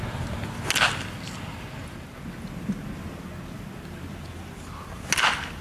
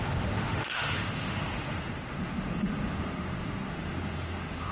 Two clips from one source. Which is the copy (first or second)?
second